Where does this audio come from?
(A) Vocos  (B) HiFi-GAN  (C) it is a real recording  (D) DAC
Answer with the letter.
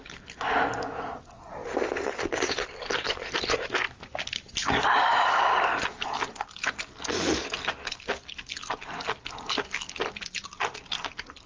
C